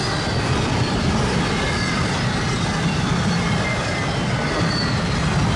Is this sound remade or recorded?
remade